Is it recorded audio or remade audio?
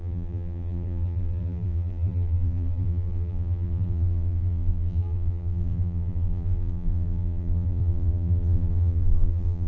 remade